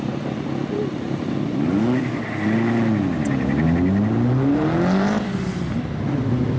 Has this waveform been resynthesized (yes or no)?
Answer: no